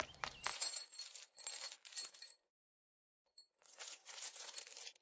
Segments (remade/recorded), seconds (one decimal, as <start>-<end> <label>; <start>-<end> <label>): 0.0-0.5 recorded; 0.5-1.0 remade; 1.0-2.0 recorded; 2.0-4.6 remade; 4.6-5.0 recorded